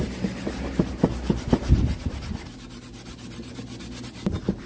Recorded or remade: recorded